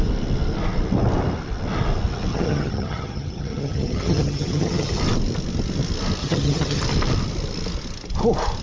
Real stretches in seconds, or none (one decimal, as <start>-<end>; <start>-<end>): 0.0-2.3; 5.0-6.2; 6.8-8.6